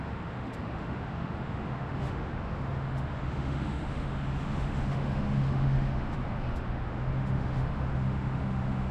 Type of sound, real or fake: fake